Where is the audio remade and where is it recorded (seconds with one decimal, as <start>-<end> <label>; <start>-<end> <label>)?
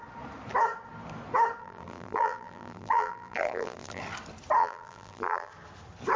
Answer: 0.0-1.6 recorded; 1.6-4.0 remade; 4.0-4.6 recorded; 4.6-5.5 remade; 5.5-6.2 recorded